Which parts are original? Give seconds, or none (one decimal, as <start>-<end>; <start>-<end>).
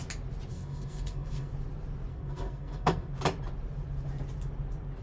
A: 0.0-0.5; 1.5-2.1; 3.1-5.0